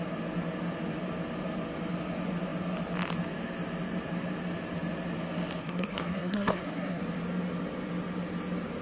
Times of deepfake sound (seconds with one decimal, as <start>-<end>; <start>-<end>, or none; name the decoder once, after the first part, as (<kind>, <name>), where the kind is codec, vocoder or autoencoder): 5.6-7.0 (codec, SNAC)

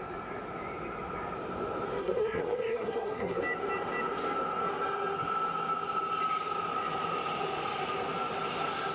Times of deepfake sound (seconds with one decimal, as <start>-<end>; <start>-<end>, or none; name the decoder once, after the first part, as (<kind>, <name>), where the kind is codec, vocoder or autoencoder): 2.0-3.4 (codec, SNAC)

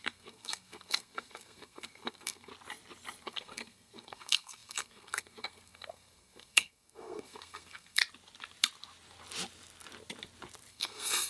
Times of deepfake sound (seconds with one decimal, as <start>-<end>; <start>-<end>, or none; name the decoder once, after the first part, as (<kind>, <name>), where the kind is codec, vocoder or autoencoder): 0.0-2.5 (codec, SNAC); 3.2-8.0; 10.7-11.3

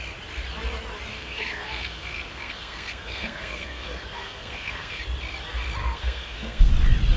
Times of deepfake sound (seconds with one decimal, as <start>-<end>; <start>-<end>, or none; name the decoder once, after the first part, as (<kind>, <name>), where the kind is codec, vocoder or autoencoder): 1.1-5.0 (codec, SNAC); 5.8-6.7